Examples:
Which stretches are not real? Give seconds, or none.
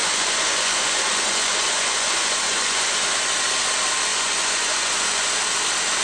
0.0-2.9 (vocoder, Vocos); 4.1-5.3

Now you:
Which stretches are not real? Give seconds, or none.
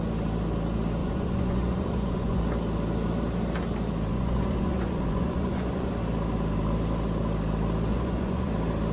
1.0-2.4 (vocoder, Vocos); 4.1-5.9; 7.9-8.5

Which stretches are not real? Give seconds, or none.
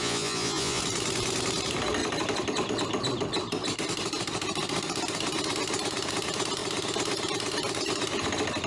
0.0-0.8 (vocoder, Vocos)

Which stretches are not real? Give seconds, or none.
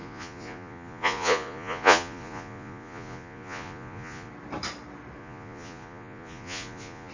0.0-4.3 (vocoder, Vocos); 5.2-7.1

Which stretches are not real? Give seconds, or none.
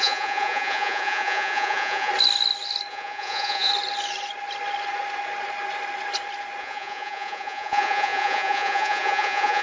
0.0-2.1 (vocoder, Vocos); 2.9-3.7; 6.6-9.6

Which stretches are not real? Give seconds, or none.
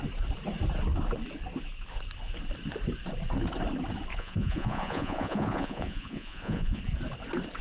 4.1-6.8 (vocoder, Vocos)